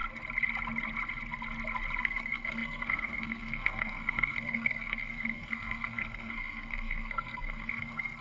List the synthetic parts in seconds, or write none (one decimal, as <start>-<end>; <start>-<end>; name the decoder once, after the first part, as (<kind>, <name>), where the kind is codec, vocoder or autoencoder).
2.0-8.2 (codec, SNAC)